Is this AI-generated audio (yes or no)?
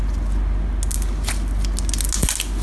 no